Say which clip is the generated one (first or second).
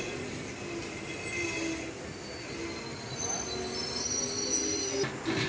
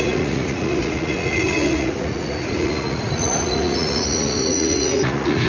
second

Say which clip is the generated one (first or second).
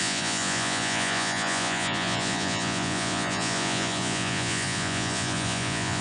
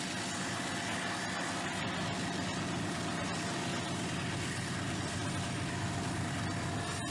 first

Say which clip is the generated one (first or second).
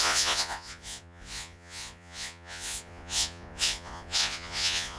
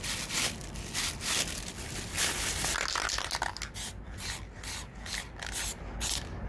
first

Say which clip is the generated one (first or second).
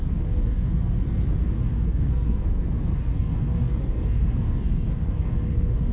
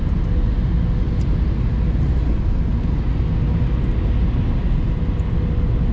first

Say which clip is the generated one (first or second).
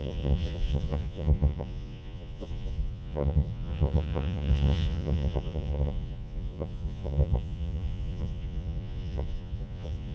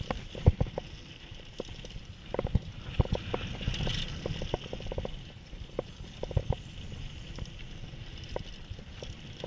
first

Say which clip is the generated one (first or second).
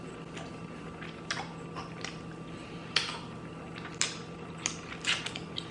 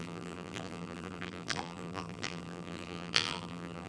second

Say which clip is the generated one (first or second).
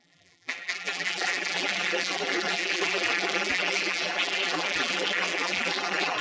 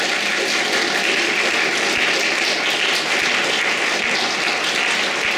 first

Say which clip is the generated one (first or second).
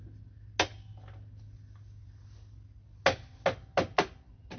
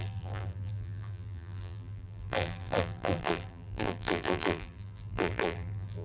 second